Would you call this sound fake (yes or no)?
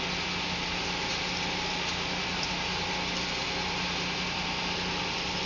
no